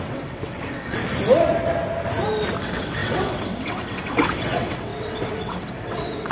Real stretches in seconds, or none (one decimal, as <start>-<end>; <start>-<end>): 1.0-2.6